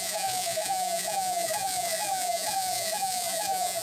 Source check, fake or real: fake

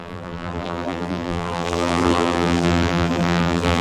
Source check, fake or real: fake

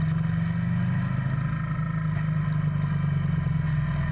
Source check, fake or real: real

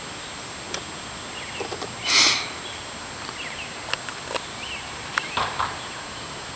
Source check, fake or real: real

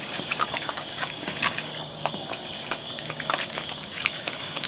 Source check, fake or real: fake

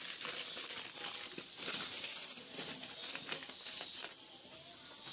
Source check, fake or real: real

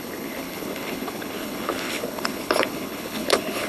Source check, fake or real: fake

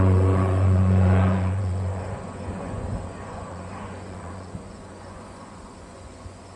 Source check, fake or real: fake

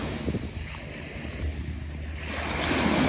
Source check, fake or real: real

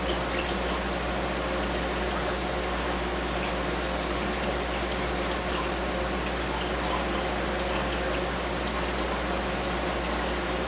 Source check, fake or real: real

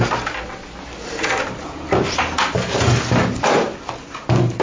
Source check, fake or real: real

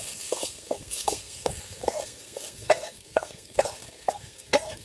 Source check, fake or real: fake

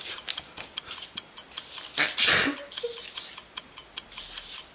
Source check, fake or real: real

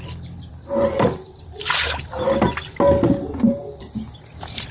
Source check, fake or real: fake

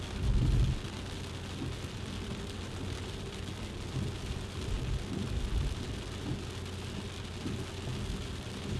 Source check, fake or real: real